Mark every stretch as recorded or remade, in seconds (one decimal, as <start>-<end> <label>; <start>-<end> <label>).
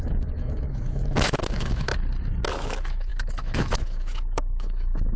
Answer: 0.0-1.9 remade; 1.9-2.5 recorded; 2.5-5.2 remade